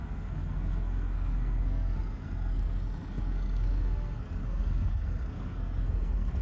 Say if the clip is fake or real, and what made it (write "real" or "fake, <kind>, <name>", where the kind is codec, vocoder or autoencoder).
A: fake, codec, SNAC